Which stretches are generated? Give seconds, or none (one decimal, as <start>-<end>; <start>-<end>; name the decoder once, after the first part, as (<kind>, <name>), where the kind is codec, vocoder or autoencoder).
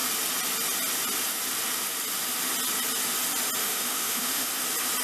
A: 3.6-4.5 (autoencoder, DAC-VAE)